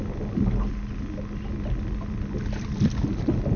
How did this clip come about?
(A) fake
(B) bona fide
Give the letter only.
B